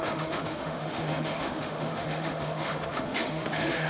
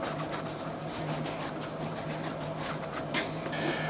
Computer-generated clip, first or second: first